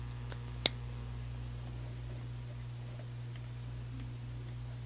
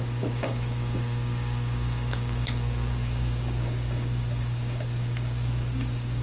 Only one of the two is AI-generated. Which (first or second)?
second